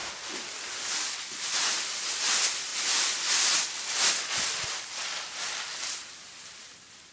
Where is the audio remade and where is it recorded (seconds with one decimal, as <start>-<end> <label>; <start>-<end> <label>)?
0.0-7.1 recorded

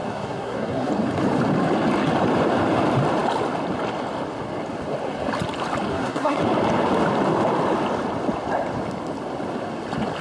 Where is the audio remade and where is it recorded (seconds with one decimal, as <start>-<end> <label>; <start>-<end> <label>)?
0.0-0.9 remade; 0.9-5.9 recorded; 5.9-6.4 remade; 6.4-10.2 recorded